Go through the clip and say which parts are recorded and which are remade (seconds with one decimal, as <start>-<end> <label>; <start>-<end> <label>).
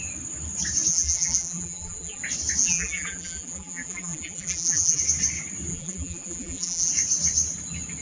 0.0-0.9 recorded; 0.9-2.2 remade; 2.2-2.6 recorded; 2.6-5.0 remade; 5.0-5.7 recorded; 5.7-6.9 remade; 6.9-8.0 recorded